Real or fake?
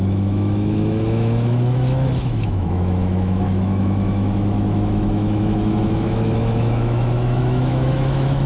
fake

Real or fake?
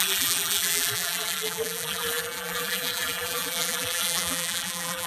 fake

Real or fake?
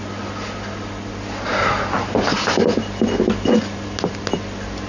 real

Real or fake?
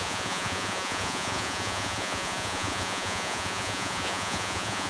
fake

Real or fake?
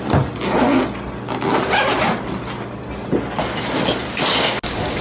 real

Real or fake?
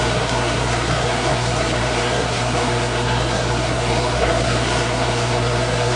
fake